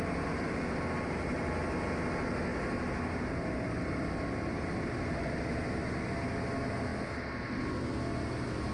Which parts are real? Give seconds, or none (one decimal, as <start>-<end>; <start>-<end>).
0.0-8.7